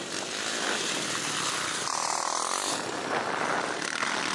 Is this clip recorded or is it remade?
remade